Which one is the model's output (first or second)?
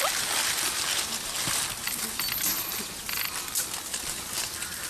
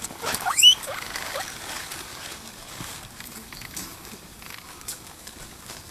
second